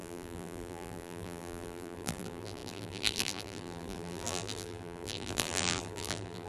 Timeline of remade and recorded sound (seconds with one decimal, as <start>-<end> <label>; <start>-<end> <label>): 0.0-6.5 remade